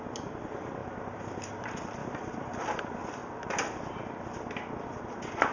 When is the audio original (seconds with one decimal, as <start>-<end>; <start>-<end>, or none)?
0.0-0.8; 1.5-2.0; 2.6-5.5